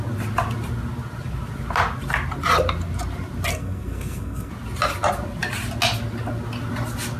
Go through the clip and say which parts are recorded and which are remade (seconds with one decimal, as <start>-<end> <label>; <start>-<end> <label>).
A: 0.0-3.5 recorded; 3.5-4.5 remade; 4.5-7.2 recorded